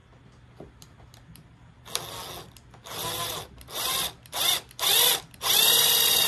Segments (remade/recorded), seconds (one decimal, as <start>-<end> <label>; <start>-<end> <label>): 0.0-6.3 recorded